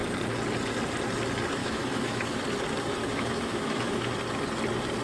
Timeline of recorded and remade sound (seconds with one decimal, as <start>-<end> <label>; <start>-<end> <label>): 0.0-1.6 recorded; 1.6-2.4 remade; 2.4-3.0 recorded; 3.0-4.1 remade; 4.1-5.0 recorded